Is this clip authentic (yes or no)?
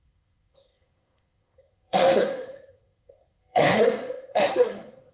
no